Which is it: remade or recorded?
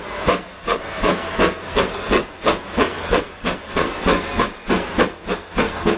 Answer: remade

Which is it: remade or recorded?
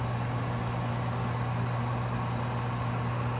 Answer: recorded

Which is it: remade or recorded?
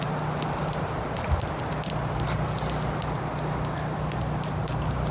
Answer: recorded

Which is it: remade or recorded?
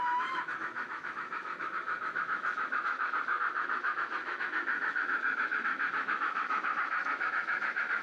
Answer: remade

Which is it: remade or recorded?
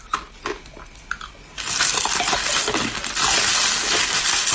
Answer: recorded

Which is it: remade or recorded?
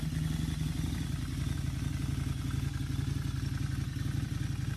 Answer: recorded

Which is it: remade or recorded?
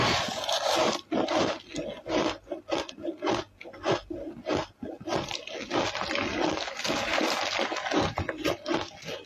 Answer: recorded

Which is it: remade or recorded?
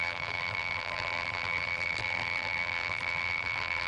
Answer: remade